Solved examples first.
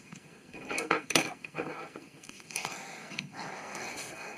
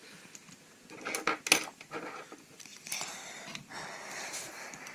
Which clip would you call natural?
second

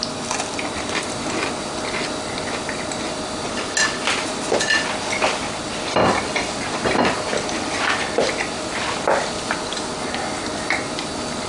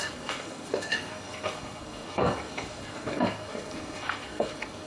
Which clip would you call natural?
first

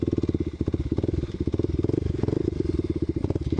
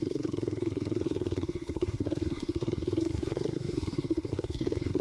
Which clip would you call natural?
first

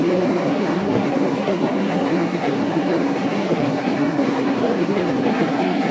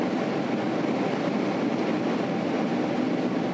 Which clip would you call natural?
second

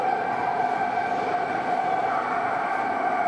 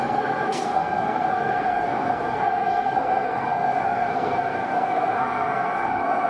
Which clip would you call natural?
first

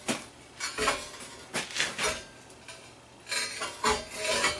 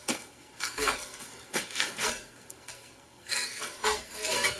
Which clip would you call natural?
first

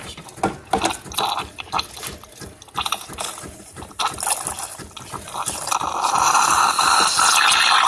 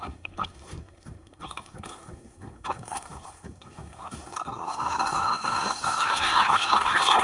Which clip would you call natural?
first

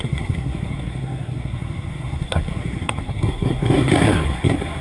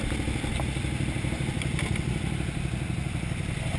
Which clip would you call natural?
second